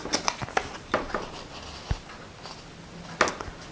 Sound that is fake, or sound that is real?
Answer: real